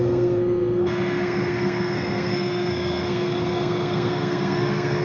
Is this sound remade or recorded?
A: remade